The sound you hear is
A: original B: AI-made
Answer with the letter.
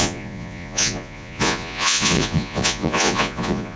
B